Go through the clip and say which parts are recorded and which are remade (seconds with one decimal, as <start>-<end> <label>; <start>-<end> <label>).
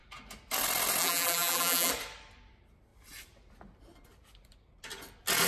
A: 0.0-1.0 recorded; 1.0-1.9 remade; 1.9-5.5 recorded